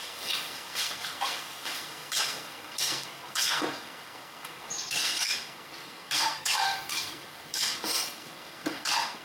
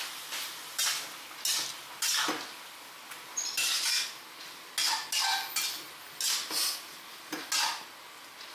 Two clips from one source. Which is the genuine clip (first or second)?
second